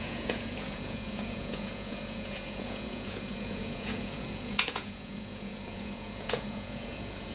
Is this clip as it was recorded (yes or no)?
no